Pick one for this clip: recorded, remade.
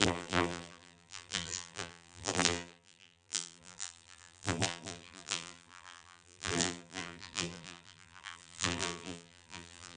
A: remade